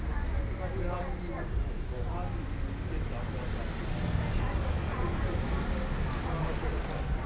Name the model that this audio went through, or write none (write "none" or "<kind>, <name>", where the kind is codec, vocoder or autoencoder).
none